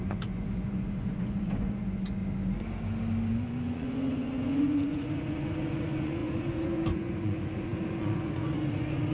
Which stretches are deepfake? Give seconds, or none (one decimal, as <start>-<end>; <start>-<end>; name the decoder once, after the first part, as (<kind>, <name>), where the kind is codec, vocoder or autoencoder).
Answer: 0.0-2.2 (vocoder, Vocos); 3.3-9.1